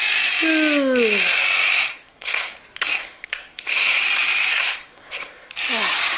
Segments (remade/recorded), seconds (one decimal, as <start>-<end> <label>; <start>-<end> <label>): 0.0-1.9 recorded; 1.9-2.5 remade; 2.5-3.0 recorded; 3.0-4.0 remade; 4.0-4.5 recorded; 4.5-5.5 remade; 5.5-6.2 recorded